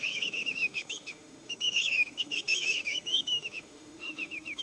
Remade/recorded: remade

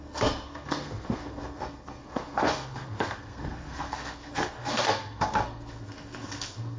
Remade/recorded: remade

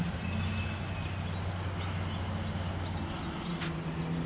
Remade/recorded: recorded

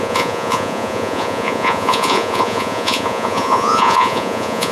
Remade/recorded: remade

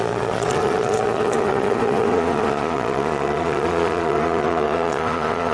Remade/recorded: remade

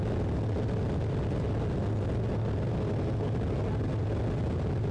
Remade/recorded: recorded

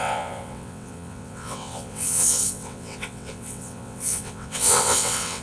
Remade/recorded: remade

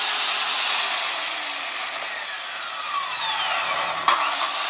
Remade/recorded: recorded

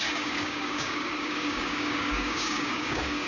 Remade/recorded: remade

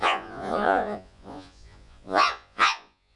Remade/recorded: remade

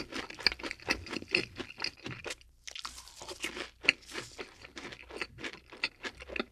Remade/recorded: recorded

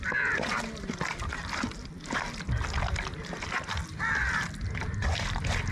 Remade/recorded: recorded